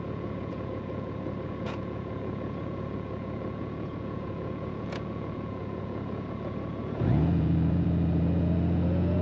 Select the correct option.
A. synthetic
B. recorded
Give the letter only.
A